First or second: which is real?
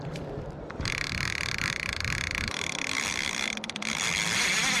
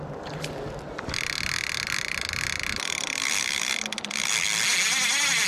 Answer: second